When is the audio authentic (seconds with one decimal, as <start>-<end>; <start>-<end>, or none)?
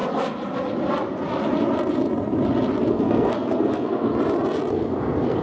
0.0-2.9; 4.1-4.7